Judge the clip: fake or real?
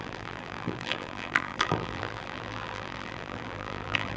fake